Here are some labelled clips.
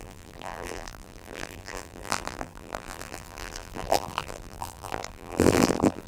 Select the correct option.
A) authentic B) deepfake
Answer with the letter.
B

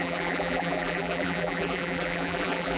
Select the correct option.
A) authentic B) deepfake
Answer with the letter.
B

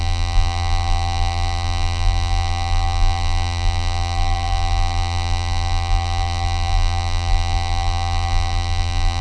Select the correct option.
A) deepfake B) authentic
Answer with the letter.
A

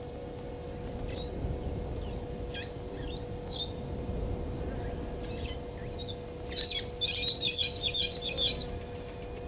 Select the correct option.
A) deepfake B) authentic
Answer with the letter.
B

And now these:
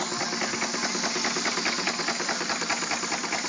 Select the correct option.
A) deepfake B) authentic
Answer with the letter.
B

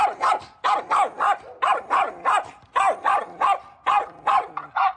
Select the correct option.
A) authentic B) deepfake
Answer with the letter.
A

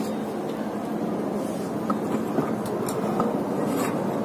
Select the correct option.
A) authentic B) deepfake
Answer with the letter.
A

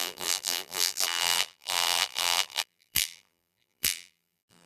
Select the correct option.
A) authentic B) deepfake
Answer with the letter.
B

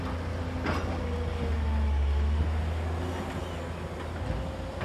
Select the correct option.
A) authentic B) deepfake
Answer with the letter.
A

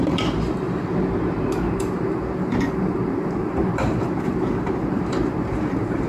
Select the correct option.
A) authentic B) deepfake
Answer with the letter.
B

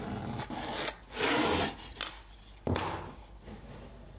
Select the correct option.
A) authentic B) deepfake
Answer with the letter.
A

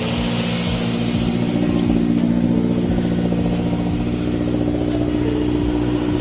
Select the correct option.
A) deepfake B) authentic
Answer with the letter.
B